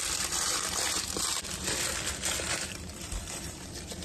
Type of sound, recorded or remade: remade